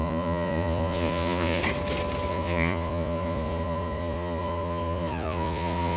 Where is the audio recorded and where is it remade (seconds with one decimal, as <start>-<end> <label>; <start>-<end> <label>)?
0.0-1.6 remade; 1.6-2.3 recorded; 2.3-6.0 remade